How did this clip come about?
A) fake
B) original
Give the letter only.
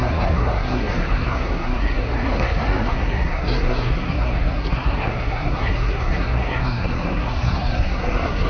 A